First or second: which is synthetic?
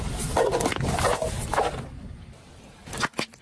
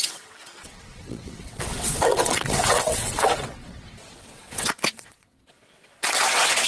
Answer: second